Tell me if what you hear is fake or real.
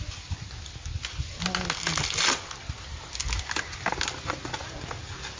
real